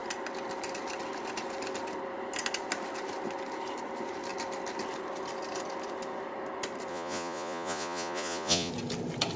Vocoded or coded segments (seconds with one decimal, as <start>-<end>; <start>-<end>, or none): 6.9-8.7